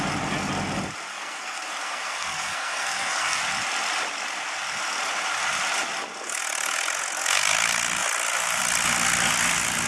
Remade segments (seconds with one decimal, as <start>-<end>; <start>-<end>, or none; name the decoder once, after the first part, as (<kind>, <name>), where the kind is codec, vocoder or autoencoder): 1.1-3.4 (codec, SNAC)

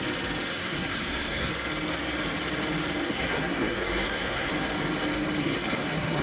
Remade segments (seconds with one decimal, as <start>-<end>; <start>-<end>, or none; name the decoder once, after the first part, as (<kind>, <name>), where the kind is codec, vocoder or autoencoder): 0.5-1.5 (codec, SNAC); 3.0-4.5; 5.4-6.2